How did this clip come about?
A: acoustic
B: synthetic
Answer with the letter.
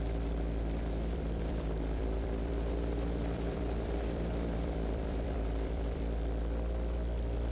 B